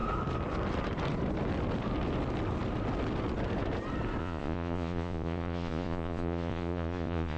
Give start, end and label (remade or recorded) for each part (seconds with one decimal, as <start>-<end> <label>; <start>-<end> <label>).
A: 0.0-4.2 recorded; 4.2-7.4 remade

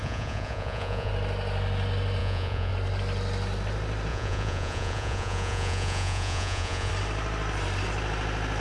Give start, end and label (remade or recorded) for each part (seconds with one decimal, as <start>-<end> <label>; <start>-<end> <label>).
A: 0.0-1.1 remade; 1.1-2.2 recorded; 2.2-2.7 remade; 2.7-4.1 recorded; 4.1-6.9 remade; 6.9-8.6 recorded

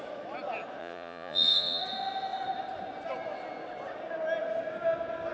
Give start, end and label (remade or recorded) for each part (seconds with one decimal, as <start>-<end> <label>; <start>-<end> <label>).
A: 0.0-0.8 recorded; 0.8-1.8 remade; 1.8-5.3 recorded

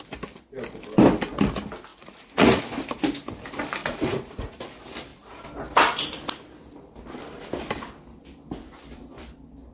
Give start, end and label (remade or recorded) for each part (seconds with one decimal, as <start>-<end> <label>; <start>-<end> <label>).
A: 0.0-1.9 recorded; 1.9-2.6 remade; 2.6-3.8 recorded; 3.8-4.6 remade; 4.6-9.7 recorded

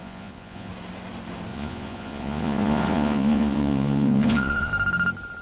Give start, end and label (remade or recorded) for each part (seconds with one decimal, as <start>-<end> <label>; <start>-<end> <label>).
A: 0.0-0.7 remade; 0.7-1.5 recorded; 1.5-4.7 remade; 4.7-5.4 recorded

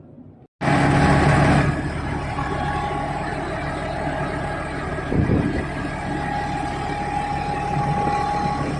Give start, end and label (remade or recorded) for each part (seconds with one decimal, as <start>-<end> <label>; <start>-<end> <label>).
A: 0.0-8.8 recorded